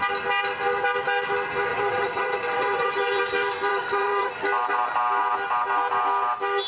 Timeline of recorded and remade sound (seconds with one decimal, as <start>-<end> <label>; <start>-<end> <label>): 0.0-1.7 recorded; 1.7-2.9 remade; 2.9-3.7 recorded; 3.7-4.3 remade; 4.3-6.7 recorded